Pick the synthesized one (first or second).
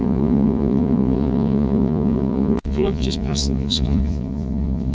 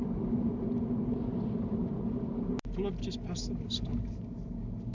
first